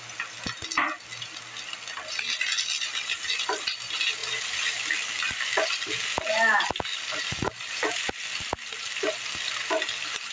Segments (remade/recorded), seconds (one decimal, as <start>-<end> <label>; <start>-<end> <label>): 0.0-10.3 recorded